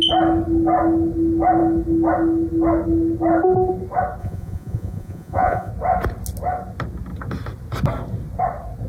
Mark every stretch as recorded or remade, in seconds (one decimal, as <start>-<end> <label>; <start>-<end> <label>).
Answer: 0.0-4.2 recorded; 4.2-5.7 remade; 5.7-8.9 recorded